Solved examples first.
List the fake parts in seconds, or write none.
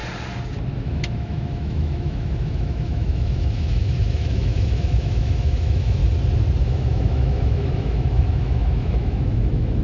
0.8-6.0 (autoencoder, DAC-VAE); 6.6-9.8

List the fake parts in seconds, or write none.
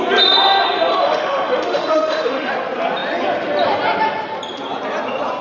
0.9-2.5 (autoencoder, DAC-VAE)